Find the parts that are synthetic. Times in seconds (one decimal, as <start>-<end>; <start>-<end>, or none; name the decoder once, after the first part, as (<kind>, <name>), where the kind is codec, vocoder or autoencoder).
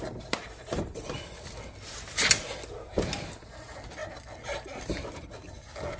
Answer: none